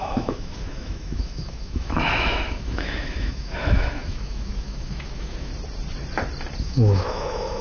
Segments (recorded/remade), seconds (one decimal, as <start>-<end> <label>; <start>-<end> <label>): 0.0-5.5 remade; 5.5-6.6 recorded; 6.6-7.6 remade